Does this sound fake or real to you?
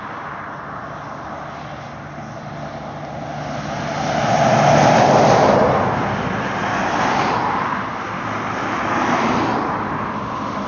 real